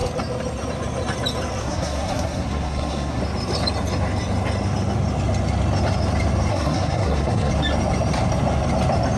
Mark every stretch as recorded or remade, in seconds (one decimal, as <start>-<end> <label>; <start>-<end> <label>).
0.0-1.6 recorded; 1.6-3.2 remade; 3.2-6.5 recorded; 6.5-7.5 remade; 7.5-9.2 recorded